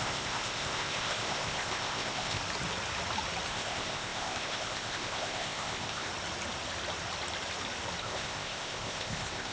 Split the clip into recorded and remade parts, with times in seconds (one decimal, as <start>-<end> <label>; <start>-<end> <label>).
0.0-2.4 remade; 2.4-3.5 recorded; 3.5-6.1 remade; 6.1-8.0 recorded; 8.0-9.5 remade